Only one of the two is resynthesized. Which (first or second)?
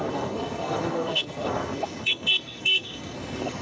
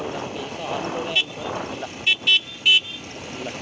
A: first